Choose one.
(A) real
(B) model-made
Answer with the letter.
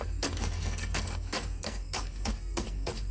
B